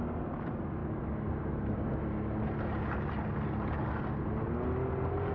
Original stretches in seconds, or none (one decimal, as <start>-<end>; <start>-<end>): 0.0-5.3